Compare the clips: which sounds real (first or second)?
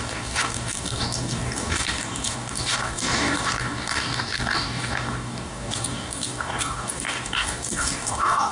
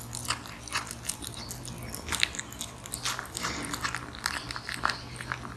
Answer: second